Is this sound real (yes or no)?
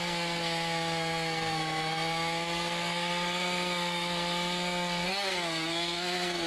no